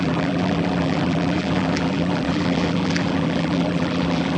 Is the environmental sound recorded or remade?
remade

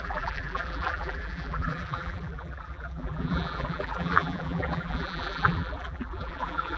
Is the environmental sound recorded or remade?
remade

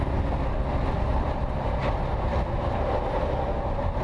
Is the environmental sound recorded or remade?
remade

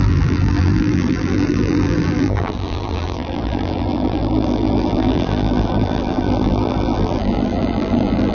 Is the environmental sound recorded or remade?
remade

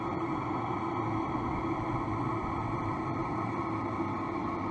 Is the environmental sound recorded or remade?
recorded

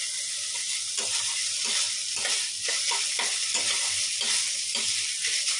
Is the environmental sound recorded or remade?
recorded